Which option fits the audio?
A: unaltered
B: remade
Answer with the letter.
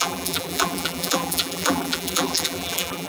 B